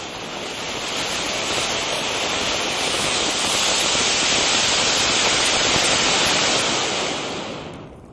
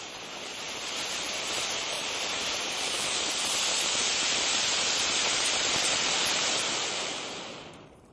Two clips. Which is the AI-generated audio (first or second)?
second